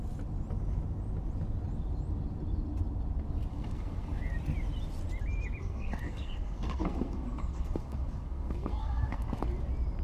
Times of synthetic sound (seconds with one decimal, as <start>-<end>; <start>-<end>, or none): 3.5-4.2; 5.6-9.4